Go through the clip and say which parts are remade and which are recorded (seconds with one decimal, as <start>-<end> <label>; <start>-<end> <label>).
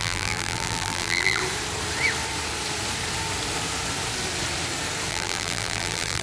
0.0-1.4 remade; 1.4-5.1 recorded; 5.1-6.2 remade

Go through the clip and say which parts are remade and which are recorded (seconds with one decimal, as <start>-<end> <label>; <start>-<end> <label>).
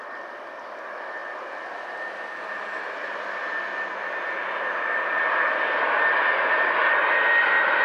0.0-7.8 recorded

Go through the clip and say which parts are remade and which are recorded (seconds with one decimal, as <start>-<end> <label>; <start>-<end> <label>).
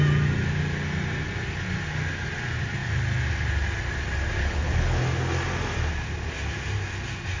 0.0-4.4 recorded; 4.4-5.0 remade; 5.0-7.4 recorded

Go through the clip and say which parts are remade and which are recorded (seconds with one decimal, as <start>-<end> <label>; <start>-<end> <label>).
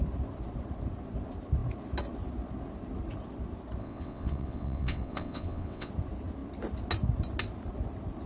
0.0-3.8 recorded; 3.8-5.9 remade; 5.9-8.3 recorded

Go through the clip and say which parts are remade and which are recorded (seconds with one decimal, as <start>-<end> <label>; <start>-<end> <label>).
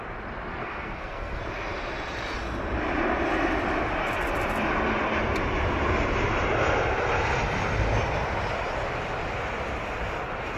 0.0-0.6 recorded; 0.6-1.4 remade; 1.4-10.6 recorded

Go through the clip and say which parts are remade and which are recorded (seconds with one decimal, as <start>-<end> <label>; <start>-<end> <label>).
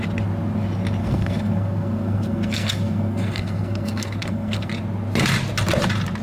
0.0-1.0 recorded; 1.0-4.7 remade; 4.7-6.2 recorded